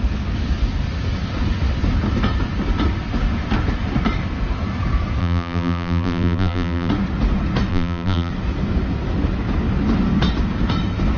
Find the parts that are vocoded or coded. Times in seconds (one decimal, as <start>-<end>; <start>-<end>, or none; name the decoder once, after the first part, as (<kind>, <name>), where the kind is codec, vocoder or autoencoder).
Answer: 5.2-6.9 (vocoder, BigVGAN v2); 7.7-8.3